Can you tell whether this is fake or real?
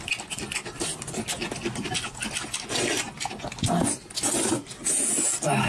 real